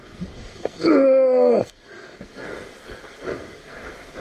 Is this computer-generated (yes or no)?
yes